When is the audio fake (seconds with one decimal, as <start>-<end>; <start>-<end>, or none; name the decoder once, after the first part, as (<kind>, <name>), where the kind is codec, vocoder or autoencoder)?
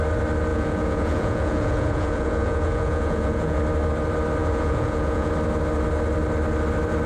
0.5-3.6 (vocoder, Vocos); 4.4-5.3